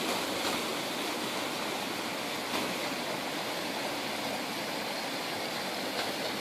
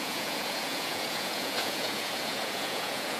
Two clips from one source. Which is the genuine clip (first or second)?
first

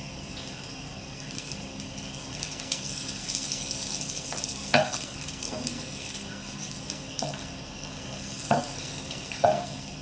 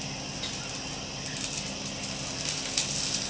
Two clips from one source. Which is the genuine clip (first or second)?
second